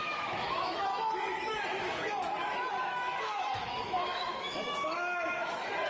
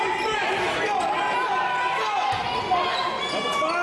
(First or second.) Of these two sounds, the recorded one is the second